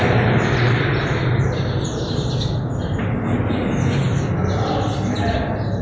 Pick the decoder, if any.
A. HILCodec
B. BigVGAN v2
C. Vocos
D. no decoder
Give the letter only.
D